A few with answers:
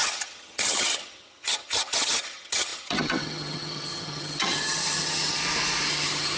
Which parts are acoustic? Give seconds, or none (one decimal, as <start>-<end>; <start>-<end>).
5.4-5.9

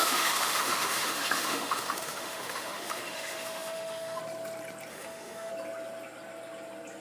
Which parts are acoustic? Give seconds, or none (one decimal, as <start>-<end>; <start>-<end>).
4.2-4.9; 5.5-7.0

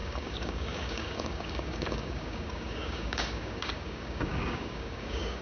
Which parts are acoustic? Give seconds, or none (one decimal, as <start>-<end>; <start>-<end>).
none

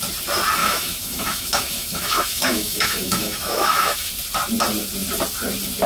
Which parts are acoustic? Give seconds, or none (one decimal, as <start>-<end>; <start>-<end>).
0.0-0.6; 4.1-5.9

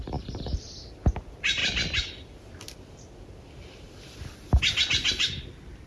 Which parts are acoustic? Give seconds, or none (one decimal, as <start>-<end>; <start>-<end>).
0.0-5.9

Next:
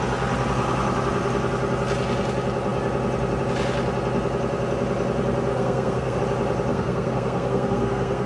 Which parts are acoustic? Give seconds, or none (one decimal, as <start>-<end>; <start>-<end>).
0.0-5.5; 6.2-6.7

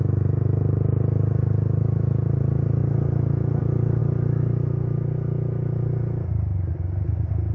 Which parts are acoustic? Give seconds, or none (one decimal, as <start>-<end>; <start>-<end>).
0.0-7.5